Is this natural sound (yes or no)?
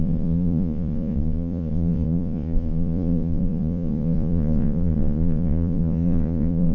no